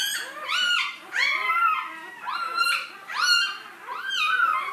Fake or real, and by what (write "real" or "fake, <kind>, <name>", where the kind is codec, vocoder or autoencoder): real